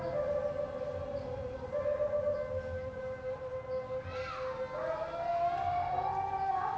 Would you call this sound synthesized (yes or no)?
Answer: no